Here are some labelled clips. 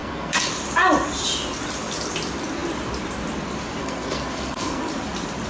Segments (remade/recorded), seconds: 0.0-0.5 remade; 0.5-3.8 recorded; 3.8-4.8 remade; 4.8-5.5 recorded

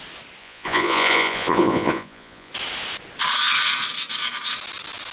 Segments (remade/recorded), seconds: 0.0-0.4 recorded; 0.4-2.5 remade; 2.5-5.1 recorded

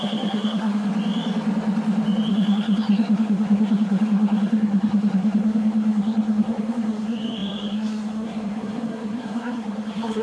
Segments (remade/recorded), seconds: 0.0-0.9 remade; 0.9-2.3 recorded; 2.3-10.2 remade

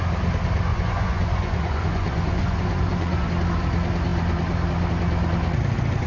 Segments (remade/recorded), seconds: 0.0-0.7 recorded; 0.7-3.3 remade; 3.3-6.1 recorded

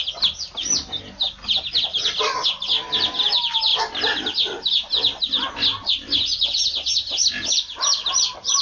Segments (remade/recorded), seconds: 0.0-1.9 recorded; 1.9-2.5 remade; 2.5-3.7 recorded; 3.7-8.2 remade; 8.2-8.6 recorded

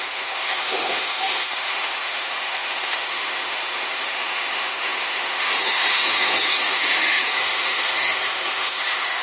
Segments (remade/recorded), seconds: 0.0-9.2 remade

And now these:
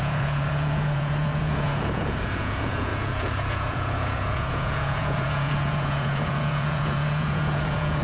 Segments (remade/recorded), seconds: 0.0-8.0 remade

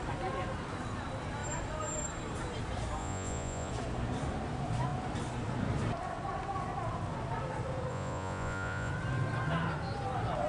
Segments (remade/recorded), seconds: 0.0-3.0 recorded; 3.0-3.7 remade; 3.7-7.9 recorded; 7.9-8.9 remade; 8.9-10.5 recorded